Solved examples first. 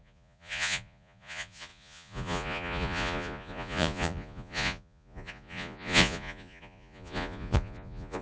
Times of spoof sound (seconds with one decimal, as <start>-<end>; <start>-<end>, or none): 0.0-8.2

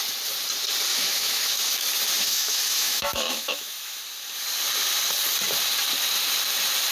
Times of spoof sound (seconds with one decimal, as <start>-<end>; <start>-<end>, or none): 0.9-1.9; 2.3-4.0

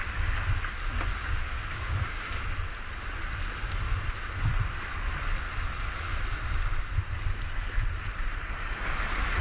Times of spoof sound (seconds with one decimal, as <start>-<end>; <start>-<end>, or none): 1.2-2.4

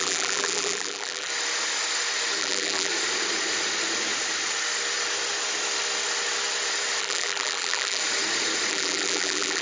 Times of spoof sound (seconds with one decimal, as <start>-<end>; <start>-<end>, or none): 0.0-1.3; 2.4-2.9; 7.0-8.0; 8.7-9.6

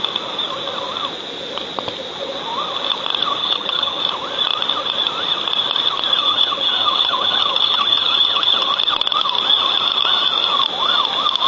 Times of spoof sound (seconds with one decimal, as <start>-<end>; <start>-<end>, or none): 3.4-4.0; 6.2-8.7

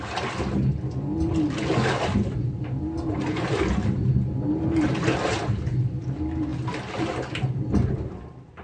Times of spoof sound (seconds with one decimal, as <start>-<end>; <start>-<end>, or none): none

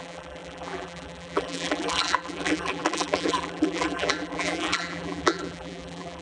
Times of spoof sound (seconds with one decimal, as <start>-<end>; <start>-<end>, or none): 0.0-6.2